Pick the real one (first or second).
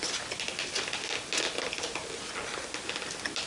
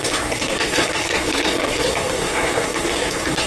first